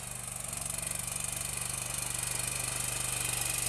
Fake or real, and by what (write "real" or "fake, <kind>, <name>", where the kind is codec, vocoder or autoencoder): real